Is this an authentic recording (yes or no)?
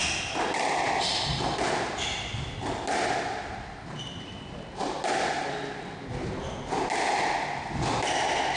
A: yes